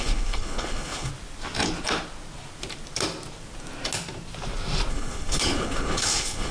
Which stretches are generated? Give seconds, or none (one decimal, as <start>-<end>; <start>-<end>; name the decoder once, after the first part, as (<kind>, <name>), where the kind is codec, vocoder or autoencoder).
0.0-1.1 (codec, HILCodec); 4.9-6.5